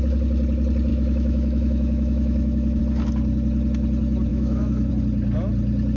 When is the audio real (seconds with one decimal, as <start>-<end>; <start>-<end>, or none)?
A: 0.0-0.9; 2.8-4.3; 4.9-6.0